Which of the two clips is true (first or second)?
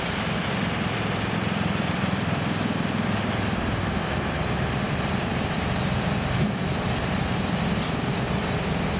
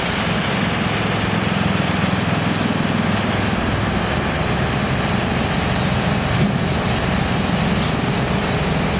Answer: second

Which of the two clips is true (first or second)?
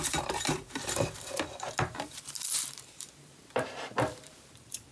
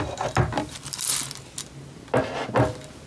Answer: second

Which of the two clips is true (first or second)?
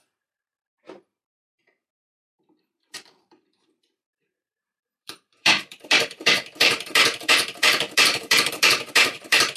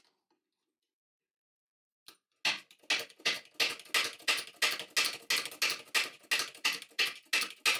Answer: second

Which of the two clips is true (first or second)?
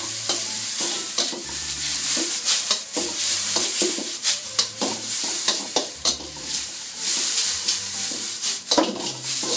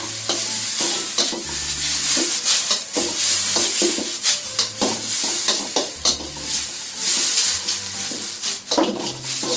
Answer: second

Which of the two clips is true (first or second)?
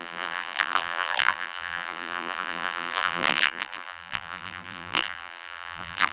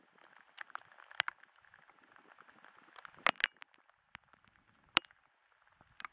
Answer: second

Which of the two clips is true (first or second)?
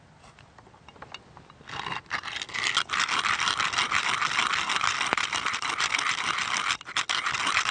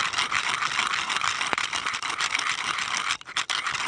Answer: first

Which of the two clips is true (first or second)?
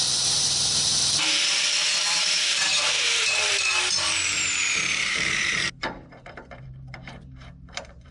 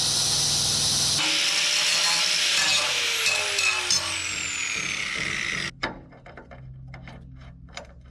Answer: second